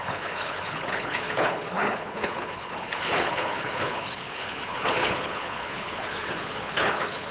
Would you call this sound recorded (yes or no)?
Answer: no